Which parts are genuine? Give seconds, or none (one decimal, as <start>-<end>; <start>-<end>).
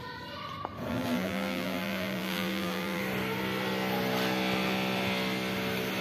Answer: 0.0-0.9; 3.0-6.0